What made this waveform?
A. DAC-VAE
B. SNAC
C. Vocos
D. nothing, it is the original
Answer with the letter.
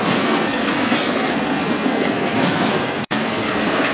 B